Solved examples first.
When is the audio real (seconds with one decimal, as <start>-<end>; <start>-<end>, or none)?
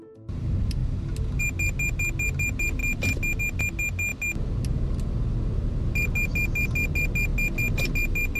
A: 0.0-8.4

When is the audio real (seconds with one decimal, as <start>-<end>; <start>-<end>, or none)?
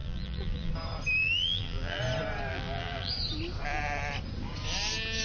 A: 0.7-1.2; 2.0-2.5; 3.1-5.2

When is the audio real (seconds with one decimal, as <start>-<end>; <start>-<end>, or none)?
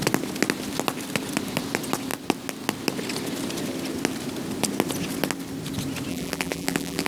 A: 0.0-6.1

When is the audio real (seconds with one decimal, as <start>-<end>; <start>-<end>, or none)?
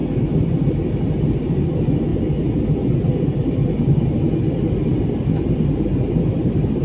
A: 0.0-1.2